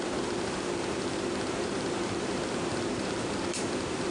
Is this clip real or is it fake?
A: fake